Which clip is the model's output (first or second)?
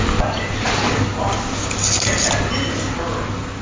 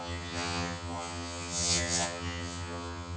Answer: second